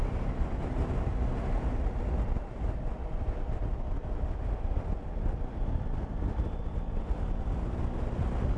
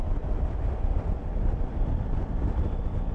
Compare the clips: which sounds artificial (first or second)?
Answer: second